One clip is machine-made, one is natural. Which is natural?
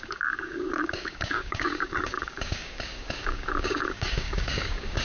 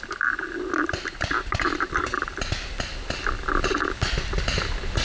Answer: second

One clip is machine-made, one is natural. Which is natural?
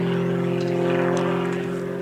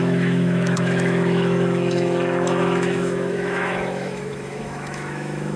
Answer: first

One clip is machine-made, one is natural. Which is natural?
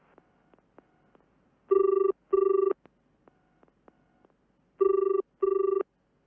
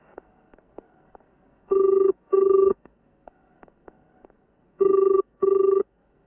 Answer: first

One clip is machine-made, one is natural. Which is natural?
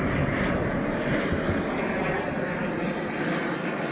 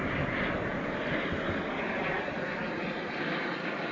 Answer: first